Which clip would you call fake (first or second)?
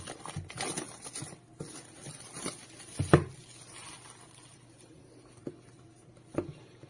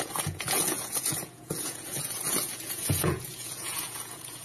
second